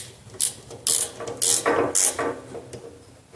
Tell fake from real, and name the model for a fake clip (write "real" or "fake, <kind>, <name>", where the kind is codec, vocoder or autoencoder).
real